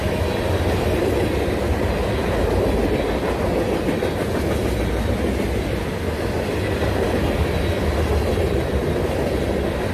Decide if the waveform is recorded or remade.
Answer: recorded